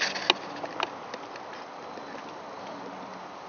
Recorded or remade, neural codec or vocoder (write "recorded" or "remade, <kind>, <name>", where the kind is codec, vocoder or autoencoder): recorded